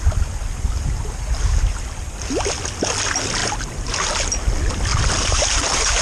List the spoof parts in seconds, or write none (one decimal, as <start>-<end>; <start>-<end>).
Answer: 4.9-6.0